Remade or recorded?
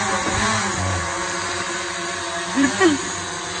recorded